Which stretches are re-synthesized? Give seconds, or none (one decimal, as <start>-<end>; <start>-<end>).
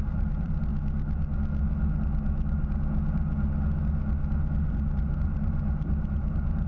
0.0-0.7; 4.7-6.7